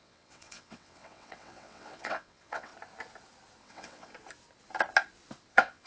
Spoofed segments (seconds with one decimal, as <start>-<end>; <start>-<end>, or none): 0.0-2.7; 3.6-4.1; 5.5-5.9